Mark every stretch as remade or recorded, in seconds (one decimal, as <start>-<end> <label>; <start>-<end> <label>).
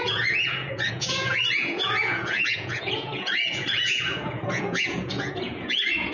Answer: 0.0-6.1 remade